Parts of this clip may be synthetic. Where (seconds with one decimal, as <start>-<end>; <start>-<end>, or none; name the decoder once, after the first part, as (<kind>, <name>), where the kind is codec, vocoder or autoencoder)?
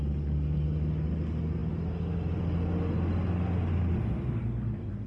none